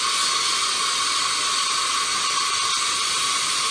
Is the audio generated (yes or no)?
no